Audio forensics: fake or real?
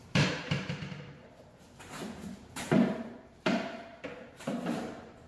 fake